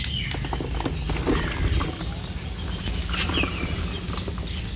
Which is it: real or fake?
real